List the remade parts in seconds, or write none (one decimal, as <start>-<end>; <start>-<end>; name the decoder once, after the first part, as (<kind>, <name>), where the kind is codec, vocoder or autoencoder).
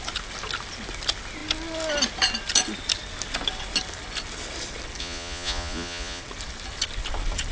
5.0-6.2 (vocoder, Vocos)